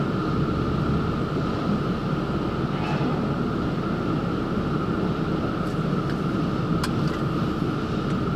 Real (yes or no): yes